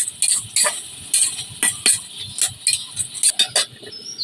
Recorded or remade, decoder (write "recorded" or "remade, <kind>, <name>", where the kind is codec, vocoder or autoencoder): recorded